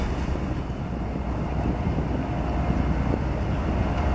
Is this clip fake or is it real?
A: real